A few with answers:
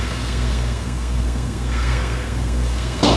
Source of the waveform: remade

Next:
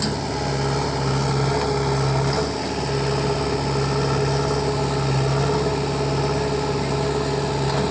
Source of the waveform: recorded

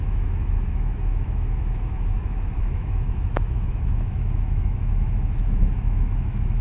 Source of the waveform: remade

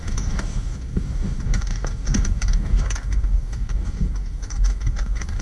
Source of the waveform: remade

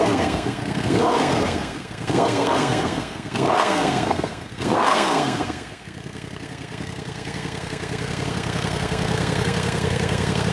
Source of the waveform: remade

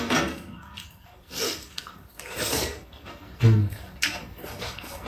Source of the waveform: remade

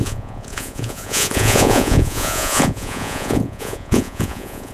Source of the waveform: remade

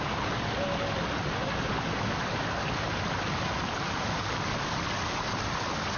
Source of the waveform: recorded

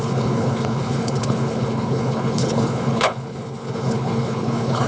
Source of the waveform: remade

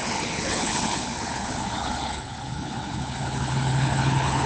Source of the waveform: remade